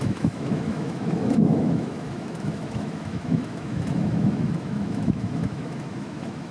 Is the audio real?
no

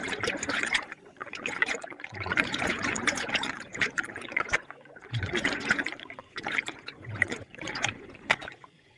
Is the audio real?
no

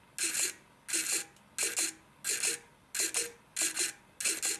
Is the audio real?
yes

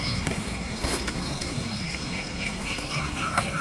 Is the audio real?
no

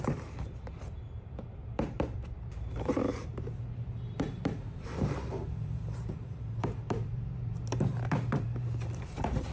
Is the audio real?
no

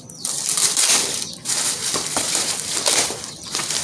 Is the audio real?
no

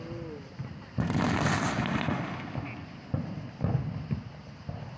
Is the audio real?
yes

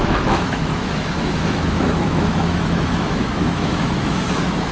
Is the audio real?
no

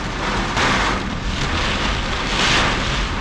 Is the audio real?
yes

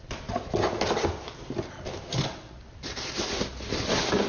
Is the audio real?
yes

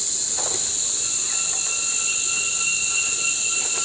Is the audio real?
yes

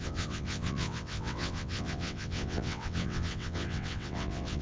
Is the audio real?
no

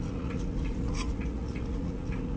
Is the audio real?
no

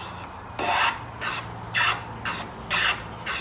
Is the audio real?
yes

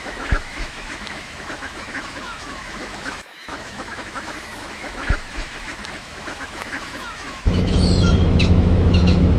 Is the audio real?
no